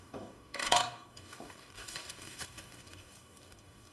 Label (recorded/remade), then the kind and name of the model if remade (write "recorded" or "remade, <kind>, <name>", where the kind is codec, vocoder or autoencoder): remade, codec, DAC